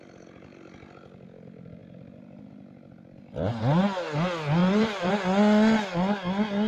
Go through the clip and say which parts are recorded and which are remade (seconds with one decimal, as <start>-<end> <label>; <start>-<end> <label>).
0.0-1.8 recorded; 1.8-3.6 remade; 3.6-4.6 recorded; 4.6-5.1 remade; 5.1-6.7 recorded

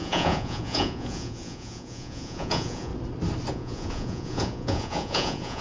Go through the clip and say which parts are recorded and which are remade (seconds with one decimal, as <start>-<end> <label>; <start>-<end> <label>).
0.0-2.9 remade; 2.9-3.5 recorded; 3.5-5.6 remade

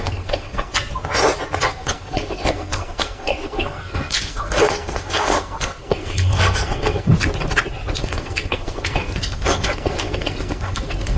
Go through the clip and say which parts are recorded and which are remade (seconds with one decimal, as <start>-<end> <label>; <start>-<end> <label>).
0.0-0.7 remade; 0.7-1.7 recorded; 1.7-7.1 remade; 7.1-8.0 recorded; 8.0-11.2 remade

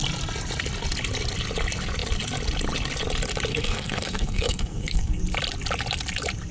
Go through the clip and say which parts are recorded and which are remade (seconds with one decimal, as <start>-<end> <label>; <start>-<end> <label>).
0.0-3.5 recorded; 3.5-5.2 remade; 5.2-6.5 recorded

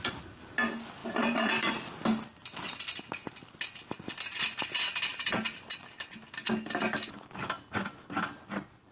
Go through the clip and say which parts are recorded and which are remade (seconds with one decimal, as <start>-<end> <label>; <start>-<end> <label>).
0.0-1.0 recorded; 1.0-1.7 remade; 1.7-4.9 recorded; 4.9-6.5 remade; 6.5-8.9 recorded

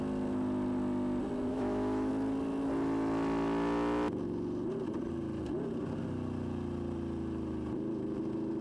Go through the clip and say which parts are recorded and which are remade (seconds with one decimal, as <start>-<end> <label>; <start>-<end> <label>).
0.0-1.5 recorded; 1.5-2.1 remade; 2.1-8.6 recorded

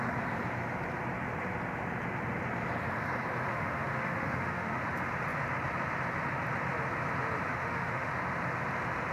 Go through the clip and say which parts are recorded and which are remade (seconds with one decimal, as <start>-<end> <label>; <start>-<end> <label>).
0.0-3.5 recorded; 3.5-4.8 remade; 4.8-7.5 recorded; 7.5-8.1 remade; 8.1-9.1 recorded